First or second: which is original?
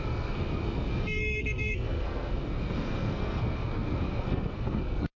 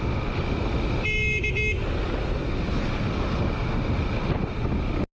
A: second